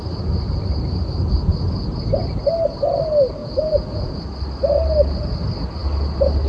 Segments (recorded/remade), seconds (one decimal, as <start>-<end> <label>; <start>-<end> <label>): 0.0-3.4 recorded; 3.4-4.2 remade; 4.2-6.5 recorded